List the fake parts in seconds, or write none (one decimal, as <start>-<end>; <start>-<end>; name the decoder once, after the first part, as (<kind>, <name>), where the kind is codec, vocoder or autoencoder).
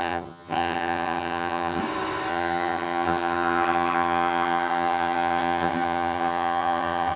0.0-1.8 (vocoder, HiFi-GAN); 2.3-7.2